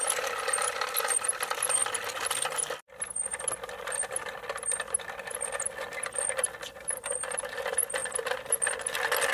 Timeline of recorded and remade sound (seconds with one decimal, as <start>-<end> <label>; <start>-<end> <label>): 0.0-9.3 recorded